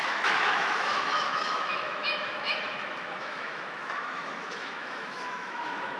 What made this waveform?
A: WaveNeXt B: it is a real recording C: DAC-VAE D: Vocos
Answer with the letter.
C